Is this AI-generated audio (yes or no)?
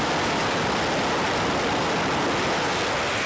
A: no